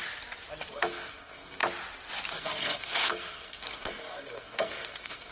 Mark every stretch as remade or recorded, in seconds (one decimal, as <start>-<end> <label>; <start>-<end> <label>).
0.0-0.7 recorded; 0.7-1.6 remade; 1.6-2.3 recorded; 2.3-5.3 remade